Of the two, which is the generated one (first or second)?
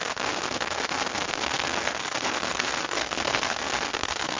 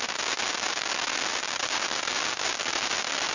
first